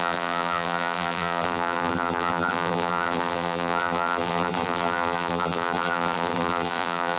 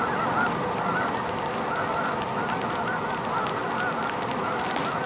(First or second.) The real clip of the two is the second